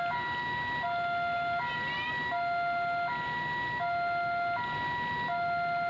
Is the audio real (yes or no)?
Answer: yes